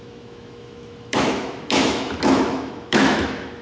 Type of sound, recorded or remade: remade